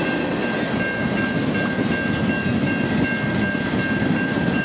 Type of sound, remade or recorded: recorded